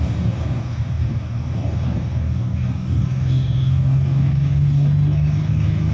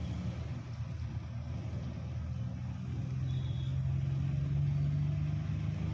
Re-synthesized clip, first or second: first